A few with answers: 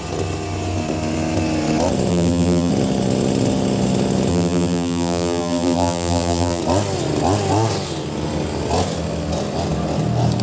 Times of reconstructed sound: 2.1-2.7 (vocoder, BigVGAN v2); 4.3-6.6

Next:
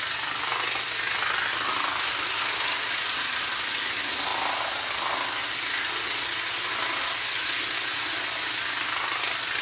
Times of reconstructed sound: none

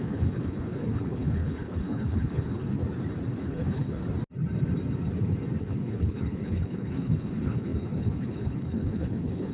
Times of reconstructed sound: 0.0-2.8 (codec, HILCodec); 3.4-4.0; 5.6-9.5

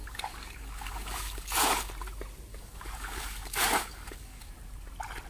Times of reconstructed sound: 0.0-1.9 (codec, DAC); 2.5-4.5